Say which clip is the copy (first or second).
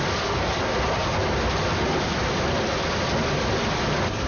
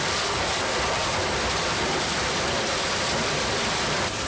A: second